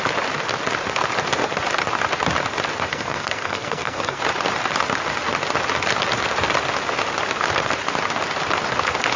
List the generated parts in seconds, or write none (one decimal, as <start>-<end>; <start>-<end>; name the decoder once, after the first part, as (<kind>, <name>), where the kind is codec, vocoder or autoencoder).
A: 2.9-4.2 (codec, SNAC)